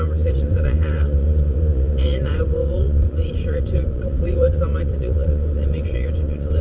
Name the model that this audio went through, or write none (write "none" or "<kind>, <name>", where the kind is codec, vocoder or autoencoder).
vocoder, Vocos